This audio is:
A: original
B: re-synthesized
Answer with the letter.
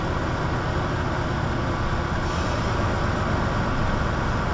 A